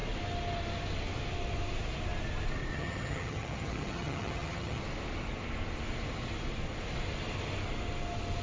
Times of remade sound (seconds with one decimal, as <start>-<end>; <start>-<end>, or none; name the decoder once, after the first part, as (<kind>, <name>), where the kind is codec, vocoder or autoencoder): 2.7-4.8 (vocoder, HiFi-GAN)